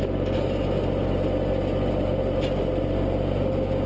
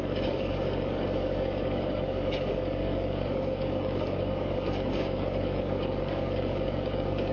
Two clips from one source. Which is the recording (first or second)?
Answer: first